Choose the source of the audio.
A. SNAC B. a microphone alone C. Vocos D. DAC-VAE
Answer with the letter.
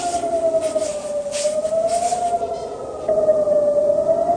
B